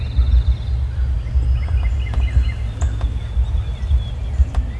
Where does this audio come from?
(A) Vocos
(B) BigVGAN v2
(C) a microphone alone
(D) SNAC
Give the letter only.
C